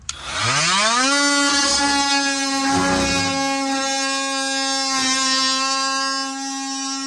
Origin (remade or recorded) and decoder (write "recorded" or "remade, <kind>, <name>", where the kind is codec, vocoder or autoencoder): recorded